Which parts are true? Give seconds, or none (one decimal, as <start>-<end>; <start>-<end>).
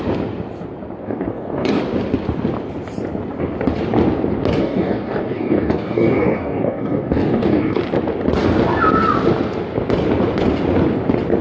0.0-1.0; 1.8-4.6; 7.8-11.4